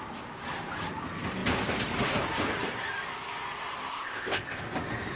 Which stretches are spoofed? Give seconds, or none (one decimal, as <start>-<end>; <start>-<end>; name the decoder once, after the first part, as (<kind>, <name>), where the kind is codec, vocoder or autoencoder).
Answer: 3.9-4.6 (codec, ZipCodec)